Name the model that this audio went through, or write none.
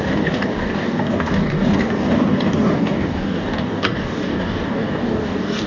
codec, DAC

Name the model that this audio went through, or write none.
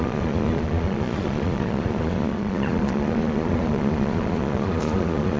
vocoder, Vocos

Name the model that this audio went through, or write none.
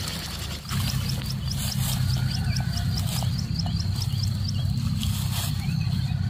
none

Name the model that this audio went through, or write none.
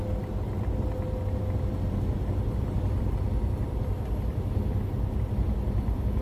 none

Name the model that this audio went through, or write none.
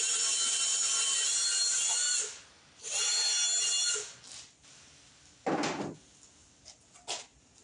none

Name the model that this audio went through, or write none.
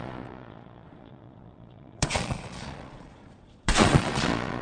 vocoder, Vocos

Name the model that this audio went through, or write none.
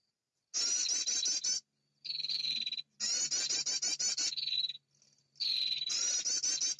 none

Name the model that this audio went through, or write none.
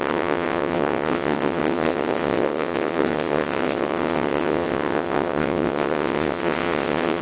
vocoder, WaveNeXt